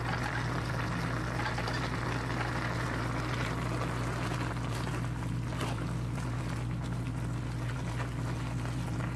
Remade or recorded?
recorded